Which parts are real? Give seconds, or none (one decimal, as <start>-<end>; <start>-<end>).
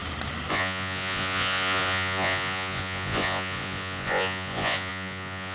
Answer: 0.0-0.5